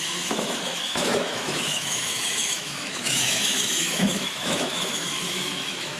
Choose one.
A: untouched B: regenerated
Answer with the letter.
B